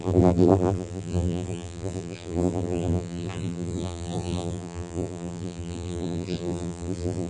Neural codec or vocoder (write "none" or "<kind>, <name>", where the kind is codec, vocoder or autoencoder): vocoder, BigVGAN v2